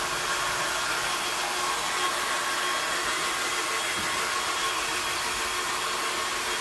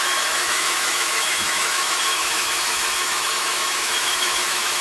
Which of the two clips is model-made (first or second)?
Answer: second